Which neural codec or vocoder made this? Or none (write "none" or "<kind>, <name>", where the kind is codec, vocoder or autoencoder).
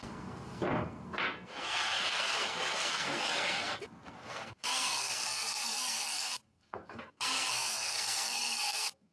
codec, SNAC